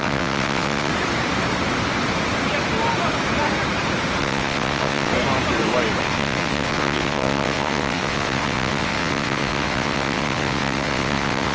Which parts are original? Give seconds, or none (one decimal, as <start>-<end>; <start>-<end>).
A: 0.9-4.2; 5.1-6.0